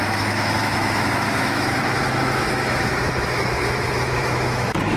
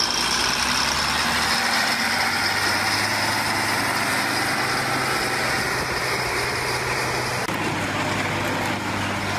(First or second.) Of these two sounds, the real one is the second